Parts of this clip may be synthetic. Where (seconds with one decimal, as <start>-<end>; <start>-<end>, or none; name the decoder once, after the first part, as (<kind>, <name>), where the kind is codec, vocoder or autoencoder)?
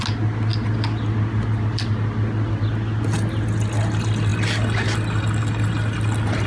none